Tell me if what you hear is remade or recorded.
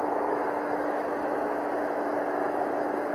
remade